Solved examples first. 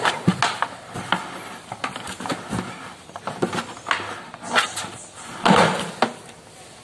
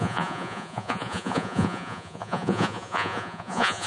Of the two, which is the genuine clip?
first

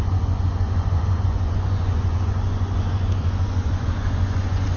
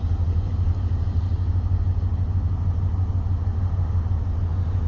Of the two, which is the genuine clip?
second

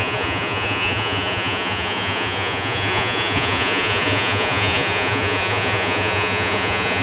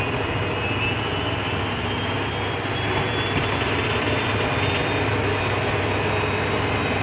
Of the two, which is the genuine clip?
second